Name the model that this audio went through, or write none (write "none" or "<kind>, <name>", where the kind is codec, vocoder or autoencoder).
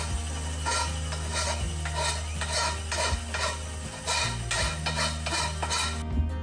none